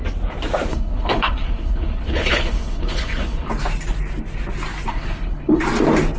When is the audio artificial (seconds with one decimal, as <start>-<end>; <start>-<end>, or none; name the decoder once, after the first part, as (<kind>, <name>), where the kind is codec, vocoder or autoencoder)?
0.7-3.5 (codec, HILCodec); 4.9-5.6